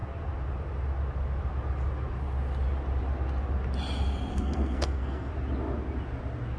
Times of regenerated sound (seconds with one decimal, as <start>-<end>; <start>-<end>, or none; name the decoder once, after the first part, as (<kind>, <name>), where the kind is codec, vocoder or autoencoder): 4.3-5.3 (codec, SNAC)